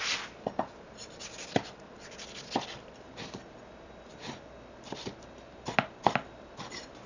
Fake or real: real